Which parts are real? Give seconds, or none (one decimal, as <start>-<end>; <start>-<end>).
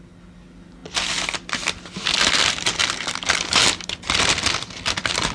0.0-5.3